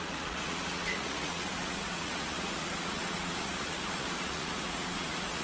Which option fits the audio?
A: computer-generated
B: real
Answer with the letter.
A